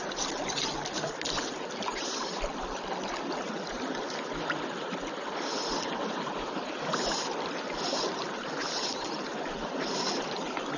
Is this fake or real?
real